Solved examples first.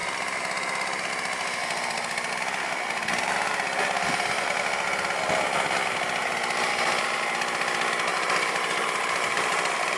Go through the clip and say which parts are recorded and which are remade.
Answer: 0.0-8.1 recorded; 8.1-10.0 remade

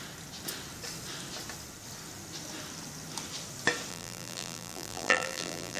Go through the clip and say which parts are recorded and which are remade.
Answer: 0.0-3.9 recorded; 3.9-5.8 remade

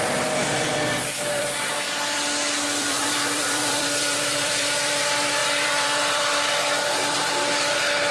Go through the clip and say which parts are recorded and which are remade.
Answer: 0.0-0.4 recorded; 0.4-1.7 remade; 1.7-2.8 recorded; 2.8-5.0 remade; 5.0-5.4 recorded; 5.4-6.3 remade; 6.3-8.1 recorded

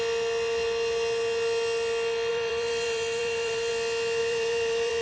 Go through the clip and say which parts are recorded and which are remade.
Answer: 0.0-2.3 recorded; 2.3-3.7 remade; 3.7-4.2 recorded; 4.2-5.0 remade

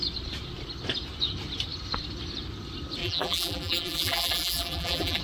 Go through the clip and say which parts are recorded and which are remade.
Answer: 0.0-3.0 recorded; 3.0-5.2 remade

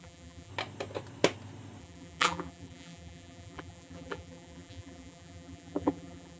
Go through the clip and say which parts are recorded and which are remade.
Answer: 0.0-0.5 remade; 0.5-1.8 recorded; 1.8-6.4 remade

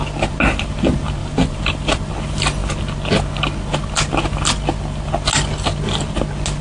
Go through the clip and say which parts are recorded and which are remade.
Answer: 0.0-1.2 recorded; 1.2-2.1 remade; 2.1-6.6 recorded

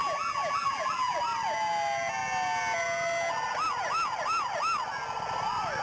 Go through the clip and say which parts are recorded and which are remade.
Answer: 0.0-1.2 remade; 1.2-5.8 recorded